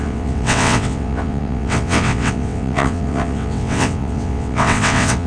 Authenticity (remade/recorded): remade